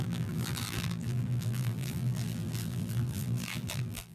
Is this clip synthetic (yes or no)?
yes